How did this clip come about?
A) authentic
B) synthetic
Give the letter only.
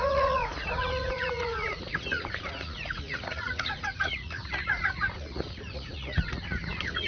B